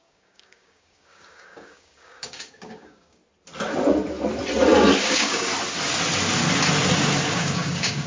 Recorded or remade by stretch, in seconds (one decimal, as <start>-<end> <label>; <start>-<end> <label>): 0.0-3.2 remade; 3.2-5.0 recorded; 5.0-5.5 remade; 5.5-7.3 recorded; 7.3-8.1 remade